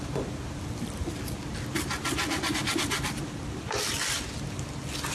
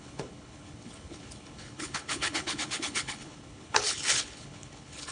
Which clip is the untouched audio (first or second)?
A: first